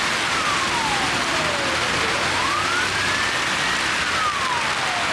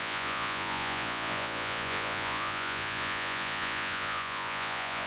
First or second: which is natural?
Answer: first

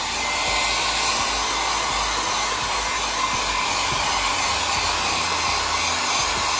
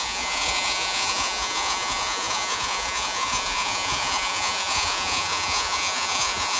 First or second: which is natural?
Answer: first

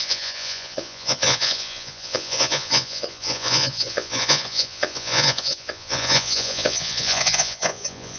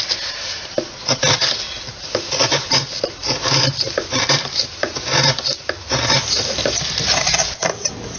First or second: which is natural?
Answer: second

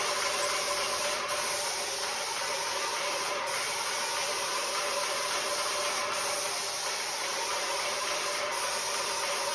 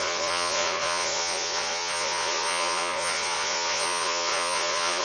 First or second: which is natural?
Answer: first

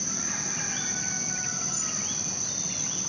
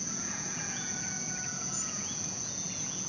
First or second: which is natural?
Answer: first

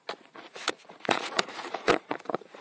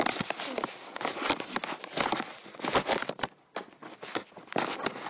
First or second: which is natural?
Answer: second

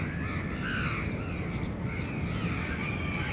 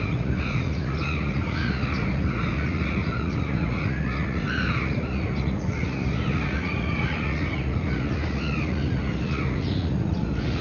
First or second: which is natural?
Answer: first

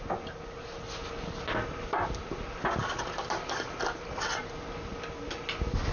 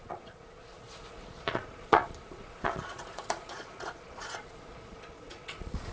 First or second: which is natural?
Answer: first